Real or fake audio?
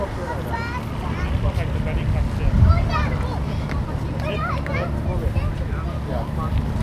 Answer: real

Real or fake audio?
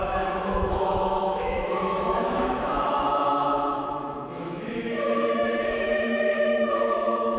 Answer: fake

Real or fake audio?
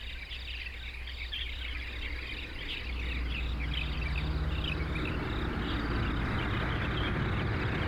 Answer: real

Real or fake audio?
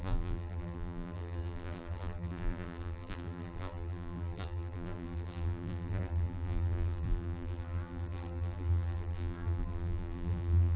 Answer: fake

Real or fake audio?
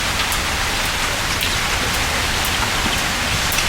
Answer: real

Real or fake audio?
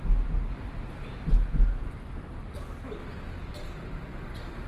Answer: real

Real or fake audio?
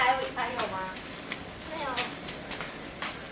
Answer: real